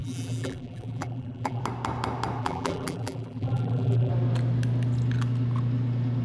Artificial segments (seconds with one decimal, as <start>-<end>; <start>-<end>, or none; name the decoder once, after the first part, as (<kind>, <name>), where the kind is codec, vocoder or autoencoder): 0.0-1.6 (vocoder, BigVGAN v2); 2.4-4.1